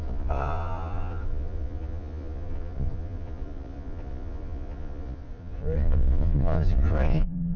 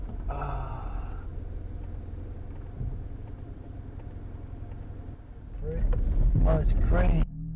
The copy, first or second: first